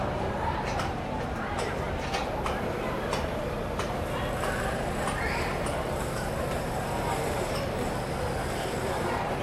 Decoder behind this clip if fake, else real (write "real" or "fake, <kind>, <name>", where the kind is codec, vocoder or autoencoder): fake, vocoder, BigVGAN v2